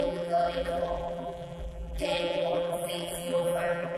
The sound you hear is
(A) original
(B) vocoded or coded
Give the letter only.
B